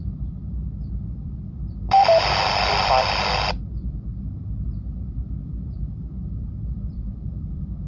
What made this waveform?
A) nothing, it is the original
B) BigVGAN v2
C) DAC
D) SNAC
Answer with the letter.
B